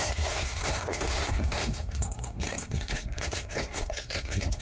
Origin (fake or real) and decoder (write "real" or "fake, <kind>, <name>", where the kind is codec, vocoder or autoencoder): fake, codec, SNAC